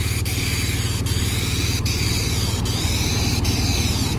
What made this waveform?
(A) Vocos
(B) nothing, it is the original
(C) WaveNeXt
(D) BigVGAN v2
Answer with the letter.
B